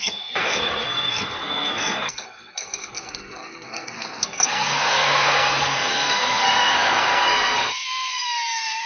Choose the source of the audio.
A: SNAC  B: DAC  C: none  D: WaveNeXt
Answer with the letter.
A